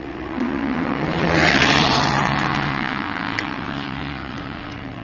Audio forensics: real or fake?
fake